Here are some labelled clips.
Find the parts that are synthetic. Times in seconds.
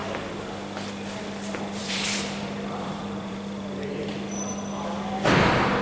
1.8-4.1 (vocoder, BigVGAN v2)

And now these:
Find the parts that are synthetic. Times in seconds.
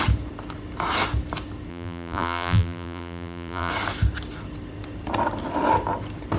1.7-3.7 (vocoder, BigVGAN v2)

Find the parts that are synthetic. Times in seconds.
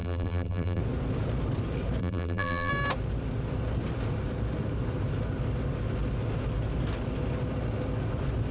0.0-0.8 (vocoder, BigVGAN v2); 2.0-2.7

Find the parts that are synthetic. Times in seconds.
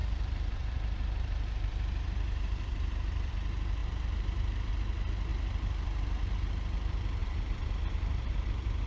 0.0-3.3 (vocoder, BigVGAN v2); 3.8-4.7; 7.2-8.9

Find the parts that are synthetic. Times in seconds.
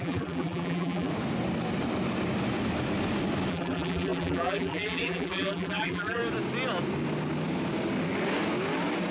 0.0-1.1 (vocoder, BigVGAN v2); 3.5-6.2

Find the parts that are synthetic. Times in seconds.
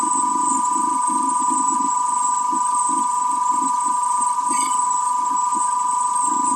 3.5-4.9 (vocoder, BigVGAN v2)